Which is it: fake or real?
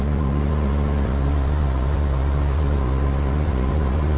fake